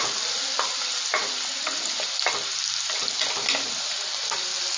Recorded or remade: recorded